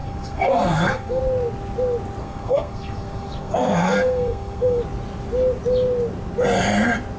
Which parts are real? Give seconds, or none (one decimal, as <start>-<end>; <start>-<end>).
1.2-2.2; 4.8-7.2